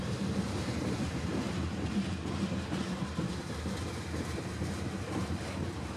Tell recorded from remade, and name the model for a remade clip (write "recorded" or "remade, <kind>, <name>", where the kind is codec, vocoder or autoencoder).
remade, vocoder, BigVGAN v2